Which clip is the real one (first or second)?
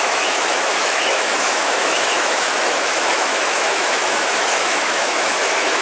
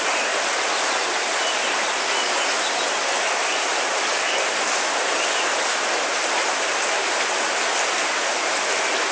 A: second